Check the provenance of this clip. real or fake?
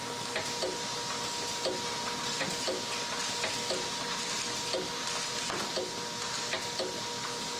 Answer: real